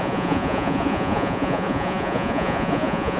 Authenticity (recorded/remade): remade